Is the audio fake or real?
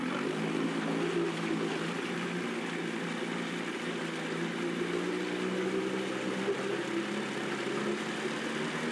real